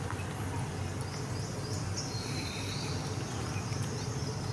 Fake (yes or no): no